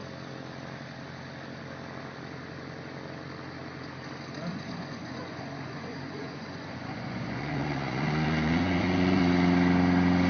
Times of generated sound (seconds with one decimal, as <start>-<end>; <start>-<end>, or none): 4.5-9.2